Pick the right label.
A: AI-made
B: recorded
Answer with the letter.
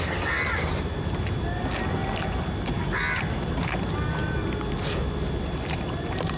B